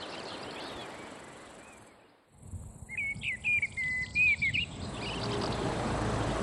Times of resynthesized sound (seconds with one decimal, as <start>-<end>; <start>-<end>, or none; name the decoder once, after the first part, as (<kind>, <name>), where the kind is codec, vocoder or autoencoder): 0.8-1.9 (vocoder, BigVGAN v2)